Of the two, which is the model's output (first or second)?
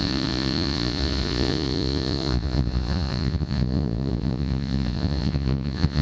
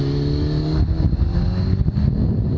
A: first